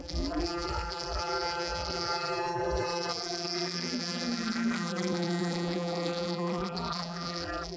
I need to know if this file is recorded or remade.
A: remade